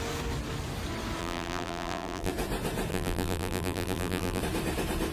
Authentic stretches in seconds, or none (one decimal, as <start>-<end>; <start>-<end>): 0.0-1.2; 2.3-2.9; 4.4-5.1